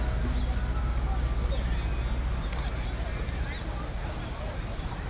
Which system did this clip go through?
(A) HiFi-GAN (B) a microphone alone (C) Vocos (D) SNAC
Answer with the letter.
B